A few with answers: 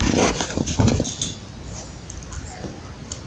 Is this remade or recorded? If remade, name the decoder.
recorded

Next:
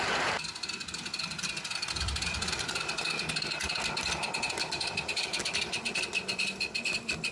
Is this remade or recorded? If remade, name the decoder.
recorded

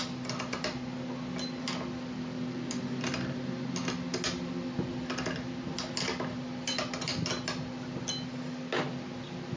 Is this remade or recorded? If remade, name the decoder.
recorded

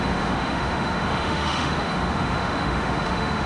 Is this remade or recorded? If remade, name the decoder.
remade, autoencoder, DAC-VAE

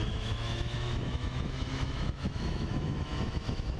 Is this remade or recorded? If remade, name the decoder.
remade, autoencoder, DAC-VAE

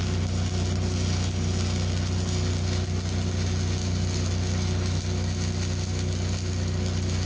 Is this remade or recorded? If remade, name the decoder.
recorded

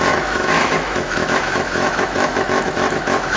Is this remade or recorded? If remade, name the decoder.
remade, autoencoder, DAC-VAE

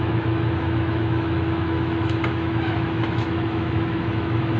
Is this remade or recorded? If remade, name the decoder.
remade, autoencoder, DAC-VAE